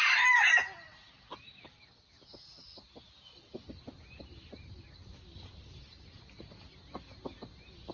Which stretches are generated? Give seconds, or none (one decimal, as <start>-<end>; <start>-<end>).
none